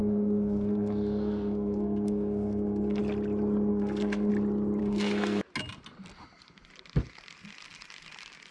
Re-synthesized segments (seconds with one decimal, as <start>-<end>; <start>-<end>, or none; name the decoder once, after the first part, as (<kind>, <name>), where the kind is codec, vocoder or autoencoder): 0.0-3.0 (codec, SNAC); 3.7-4.3; 4.8-5.4